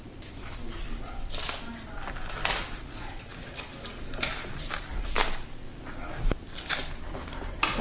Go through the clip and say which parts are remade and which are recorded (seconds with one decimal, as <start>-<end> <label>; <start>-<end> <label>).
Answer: 0.0-7.8 recorded